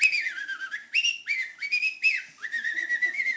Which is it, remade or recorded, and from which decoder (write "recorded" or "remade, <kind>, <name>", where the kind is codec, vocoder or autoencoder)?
recorded